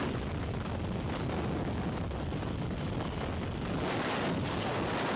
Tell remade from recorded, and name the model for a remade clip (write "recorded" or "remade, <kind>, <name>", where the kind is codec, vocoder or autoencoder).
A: recorded